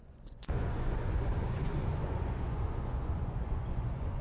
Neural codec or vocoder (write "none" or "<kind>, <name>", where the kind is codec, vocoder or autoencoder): vocoder, Vocos